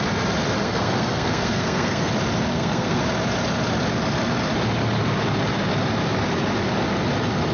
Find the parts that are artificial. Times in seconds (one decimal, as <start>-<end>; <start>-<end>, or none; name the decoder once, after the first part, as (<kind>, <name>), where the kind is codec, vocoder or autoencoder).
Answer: 0.6-2.1 (codec, SNAC); 2.5-3.0